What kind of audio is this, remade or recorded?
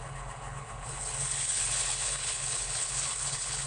remade